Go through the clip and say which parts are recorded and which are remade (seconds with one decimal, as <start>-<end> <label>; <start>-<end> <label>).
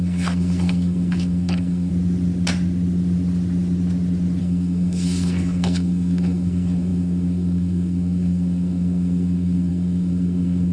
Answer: 0.0-1.9 remade; 1.9-4.4 recorded; 4.4-10.7 remade